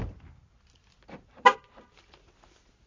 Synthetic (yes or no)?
no